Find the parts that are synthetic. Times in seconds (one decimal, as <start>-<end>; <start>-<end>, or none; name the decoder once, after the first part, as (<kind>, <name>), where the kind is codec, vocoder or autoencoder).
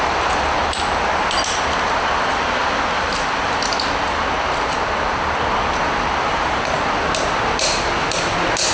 none